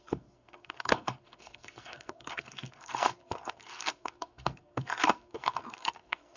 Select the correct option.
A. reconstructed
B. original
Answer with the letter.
A